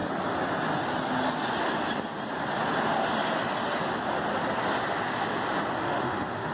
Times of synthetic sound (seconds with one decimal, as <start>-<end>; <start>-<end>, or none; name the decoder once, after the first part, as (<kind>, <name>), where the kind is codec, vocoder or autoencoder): 5.8-6.5 (autoencoder, DAC-VAE)